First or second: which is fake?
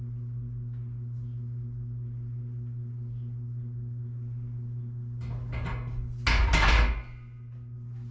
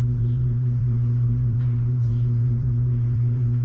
second